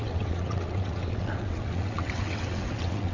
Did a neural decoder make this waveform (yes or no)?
yes